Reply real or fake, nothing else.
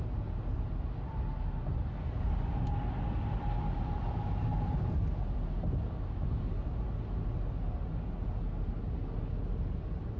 real